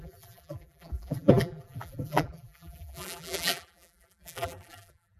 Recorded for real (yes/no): no